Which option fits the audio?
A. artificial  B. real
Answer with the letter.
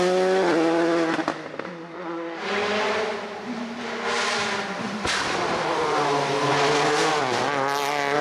B